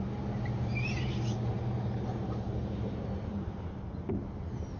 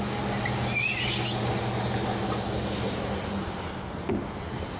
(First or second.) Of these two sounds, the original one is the second